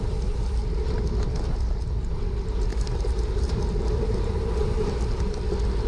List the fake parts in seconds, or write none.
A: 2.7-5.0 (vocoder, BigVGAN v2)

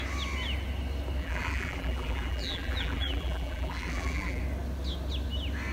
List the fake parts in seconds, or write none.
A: 1.2-4.4 (vocoder, BigVGAN v2)